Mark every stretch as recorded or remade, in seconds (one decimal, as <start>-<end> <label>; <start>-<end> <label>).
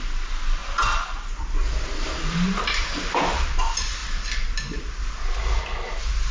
0.0-6.3 recorded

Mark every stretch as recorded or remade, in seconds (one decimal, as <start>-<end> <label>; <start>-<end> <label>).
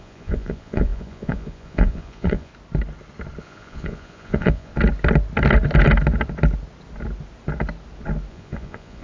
0.0-2.5 remade; 2.5-3.4 recorded; 3.4-4.7 remade; 4.7-8.3 recorded; 8.3-9.0 remade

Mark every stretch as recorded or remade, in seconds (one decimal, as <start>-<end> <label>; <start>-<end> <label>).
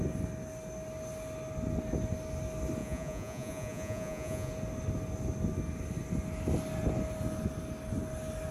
0.0-2.8 recorded; 2.8-4.5 remade; 4.5-8.5 recorded